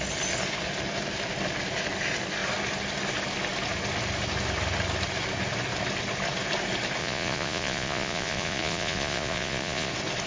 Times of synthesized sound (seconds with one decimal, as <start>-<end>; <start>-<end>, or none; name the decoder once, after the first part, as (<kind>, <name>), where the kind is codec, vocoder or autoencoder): 7.0-9.9 (vocoder, Vocos)